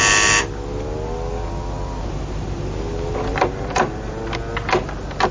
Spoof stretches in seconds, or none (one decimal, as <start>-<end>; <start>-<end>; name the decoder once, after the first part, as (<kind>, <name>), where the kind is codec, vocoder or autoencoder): 3.3-4.1 (vocoder, BigVGAN v2)